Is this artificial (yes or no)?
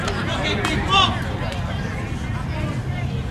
no